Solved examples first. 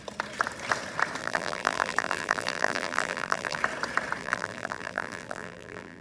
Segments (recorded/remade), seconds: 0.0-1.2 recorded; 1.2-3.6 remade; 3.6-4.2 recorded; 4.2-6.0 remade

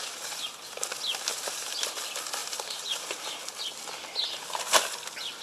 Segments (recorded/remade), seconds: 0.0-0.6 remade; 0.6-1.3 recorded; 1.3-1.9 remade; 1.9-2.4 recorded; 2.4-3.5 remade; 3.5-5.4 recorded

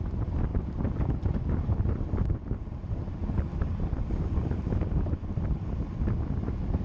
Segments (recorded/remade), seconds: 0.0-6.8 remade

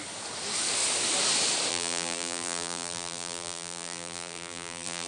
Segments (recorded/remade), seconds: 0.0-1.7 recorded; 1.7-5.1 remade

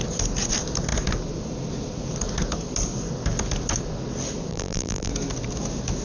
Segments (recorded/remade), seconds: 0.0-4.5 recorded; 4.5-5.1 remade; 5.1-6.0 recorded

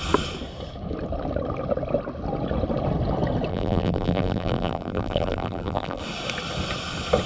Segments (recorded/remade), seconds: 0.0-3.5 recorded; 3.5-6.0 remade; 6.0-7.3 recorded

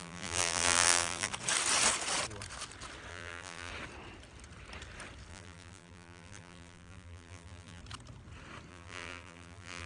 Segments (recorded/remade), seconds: 0.0-1.3 remade; 1.3-3.1 recorded; 3.1-3.7 remade; 3.7-5.3 recorded; 5.3-7.8 remade; 7.8-8.7 recorded; 8.7-9.9 remade

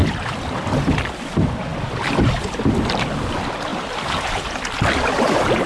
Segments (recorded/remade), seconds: 0.0-1.1 remade; 1.1-3.7 recorded; 3.7-4.3 remade; 4.3-5.7 recorded